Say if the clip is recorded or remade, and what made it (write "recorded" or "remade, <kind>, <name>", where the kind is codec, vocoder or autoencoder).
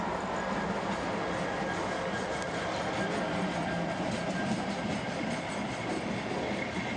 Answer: recorded